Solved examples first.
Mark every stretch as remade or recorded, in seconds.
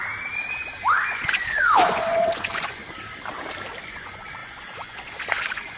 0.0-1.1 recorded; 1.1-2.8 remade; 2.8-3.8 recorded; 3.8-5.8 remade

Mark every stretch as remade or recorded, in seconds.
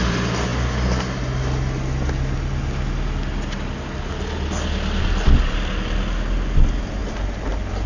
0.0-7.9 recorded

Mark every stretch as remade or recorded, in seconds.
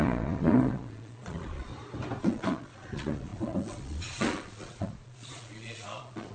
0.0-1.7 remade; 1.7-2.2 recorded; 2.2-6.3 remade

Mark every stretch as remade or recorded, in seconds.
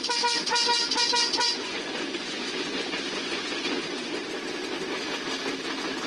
0.0-1.4 recorded; 1.4-4.2 remade; 4.2-6.1 recorded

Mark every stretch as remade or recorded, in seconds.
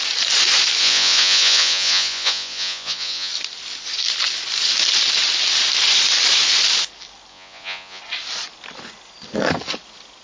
0.0-0.8 recorded; 0.8-3.3 remade; 3.3-7.3 recorded; 7.3-8.0 remade; 8.0-10.2 recorded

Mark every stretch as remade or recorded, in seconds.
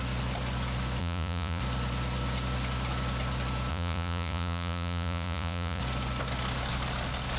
0.0-1.0 recorded; 1.0-1.6 remade; 1.6-3.7 recorded; 3.7-5.8 remade; 5.8-7.4 recorded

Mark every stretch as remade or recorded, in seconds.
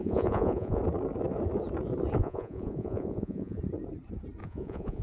0.0-0.8 remade; 0.8-2.2 recorded; 2.2-3.6 remade; 3.6-4.4 recorded; 4.4-5.0 remade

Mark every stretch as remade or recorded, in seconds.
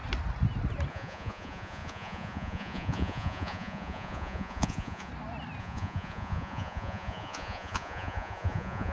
0.0-0.9 recorded; 0.9-5.1 remade; 5.1-5.6 recorded; 5.6-8.9 remade